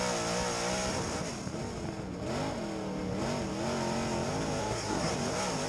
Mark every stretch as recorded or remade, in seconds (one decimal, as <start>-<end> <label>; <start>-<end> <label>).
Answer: 0.0-4.6 recorded; 4.6-5.1 remade; 5.1-5.7 recorded